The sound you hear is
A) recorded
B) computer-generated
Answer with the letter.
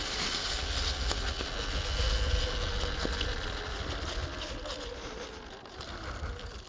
A